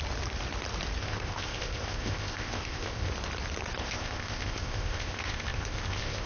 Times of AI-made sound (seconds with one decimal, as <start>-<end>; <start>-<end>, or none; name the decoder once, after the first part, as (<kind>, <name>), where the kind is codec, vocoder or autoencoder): 1.0-3.1 (codec, ZipCodec); 3.8-6.3

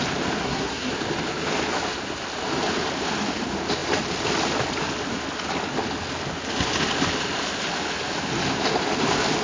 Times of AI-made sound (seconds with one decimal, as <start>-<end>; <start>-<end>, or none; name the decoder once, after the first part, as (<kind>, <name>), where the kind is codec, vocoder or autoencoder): 0.4-0.9 (codec, SNAC)

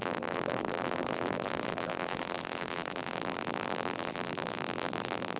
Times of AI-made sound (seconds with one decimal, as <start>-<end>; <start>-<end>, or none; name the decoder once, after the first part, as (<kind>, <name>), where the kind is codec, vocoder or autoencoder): 0.0-5.4 (vocoder, BigVGAN v2)

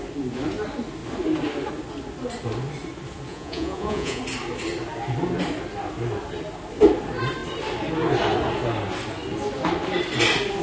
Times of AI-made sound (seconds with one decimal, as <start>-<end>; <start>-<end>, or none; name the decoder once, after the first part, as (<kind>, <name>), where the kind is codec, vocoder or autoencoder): 3.3-4.2 (vocoder, Vocos)

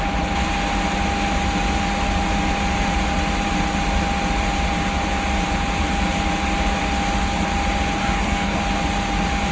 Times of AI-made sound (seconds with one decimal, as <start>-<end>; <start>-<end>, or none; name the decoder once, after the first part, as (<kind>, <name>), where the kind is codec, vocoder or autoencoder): 8.0-8.6 (codec, SNAC)

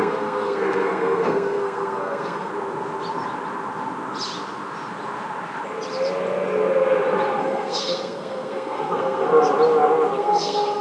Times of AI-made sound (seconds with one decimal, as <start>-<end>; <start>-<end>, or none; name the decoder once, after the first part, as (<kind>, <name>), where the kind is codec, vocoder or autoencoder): 0.0-2.5 (codec, SNAC); 7.4-9.3; 10.2-10.8

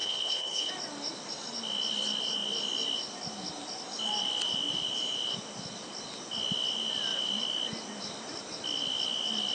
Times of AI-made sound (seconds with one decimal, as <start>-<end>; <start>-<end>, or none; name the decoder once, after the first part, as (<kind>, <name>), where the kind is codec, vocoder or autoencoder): 0.0-0.7 (codec, HILCodec)

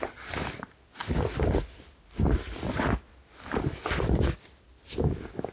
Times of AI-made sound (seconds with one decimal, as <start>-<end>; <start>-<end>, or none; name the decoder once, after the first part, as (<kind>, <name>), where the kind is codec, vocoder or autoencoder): none